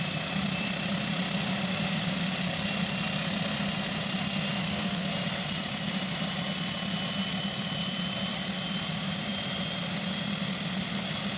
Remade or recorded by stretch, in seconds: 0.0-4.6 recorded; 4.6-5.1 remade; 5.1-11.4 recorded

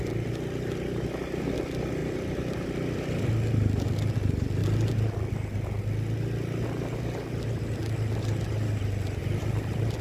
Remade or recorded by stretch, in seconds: 0.0-2.0 recorded; 2.0-3.9 remade; 3.9-9.2 recorded; 9.2-10.0 remade